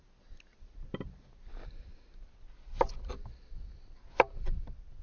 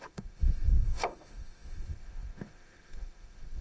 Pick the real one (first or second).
first